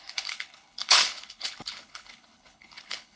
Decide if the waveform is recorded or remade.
remade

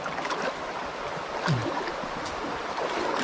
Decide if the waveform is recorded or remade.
recorded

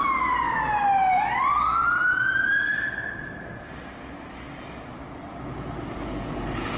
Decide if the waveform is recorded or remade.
recorded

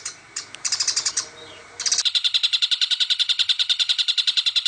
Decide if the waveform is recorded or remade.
recorded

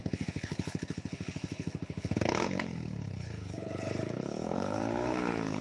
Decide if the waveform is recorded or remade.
remade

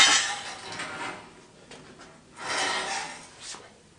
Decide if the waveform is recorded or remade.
recorded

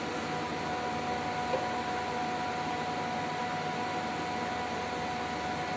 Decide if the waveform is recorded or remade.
recorded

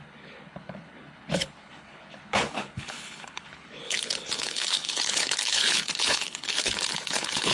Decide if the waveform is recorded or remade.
remade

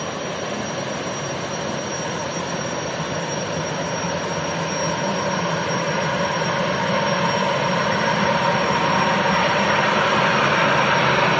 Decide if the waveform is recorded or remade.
recorded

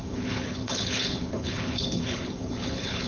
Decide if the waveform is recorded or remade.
remade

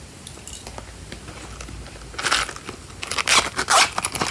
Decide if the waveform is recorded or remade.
recorded